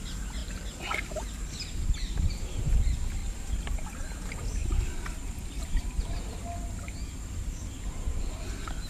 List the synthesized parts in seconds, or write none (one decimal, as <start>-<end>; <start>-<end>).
0.4-1.1; 3.2-3.7; 4.6-6.2

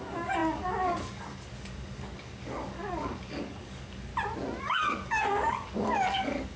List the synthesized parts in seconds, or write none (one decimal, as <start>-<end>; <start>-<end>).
0.0-4.1; 4.6-6.6

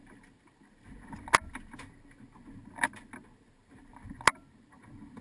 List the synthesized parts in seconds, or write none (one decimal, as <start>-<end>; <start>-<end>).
2.6-3.9

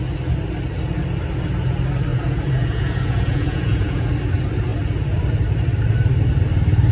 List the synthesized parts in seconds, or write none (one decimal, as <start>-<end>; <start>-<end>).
2.1-4.1

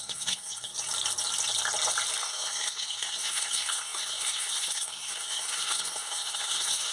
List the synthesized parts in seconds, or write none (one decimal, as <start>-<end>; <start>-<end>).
0.0-0.7; 2.2-6.9